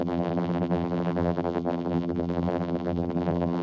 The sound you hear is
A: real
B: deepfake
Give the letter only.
B